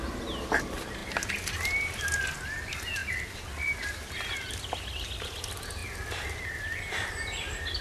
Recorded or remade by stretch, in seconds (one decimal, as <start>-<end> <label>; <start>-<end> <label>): 0.0-7.8 recorded